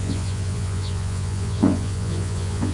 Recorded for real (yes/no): no